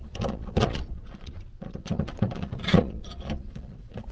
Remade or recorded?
remade